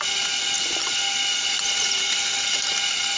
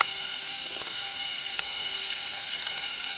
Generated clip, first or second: second